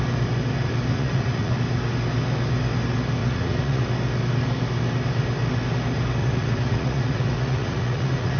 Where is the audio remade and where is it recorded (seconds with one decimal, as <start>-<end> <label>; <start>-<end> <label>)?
0.0-0.9 recorded; 0.9-1.6 remade; 1.6-3.2 recorded; 3.2-3.8 remade; 3.8-6.2 recorded; 6.2-8.4 remade